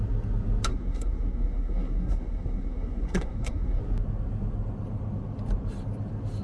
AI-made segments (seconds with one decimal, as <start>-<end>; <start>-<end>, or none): 0.7-3.8